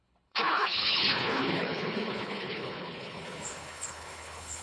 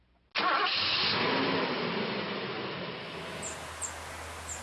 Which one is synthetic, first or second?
first